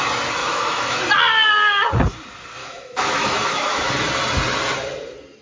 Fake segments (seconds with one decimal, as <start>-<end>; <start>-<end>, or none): 0.4-1.0; 2.6-3.9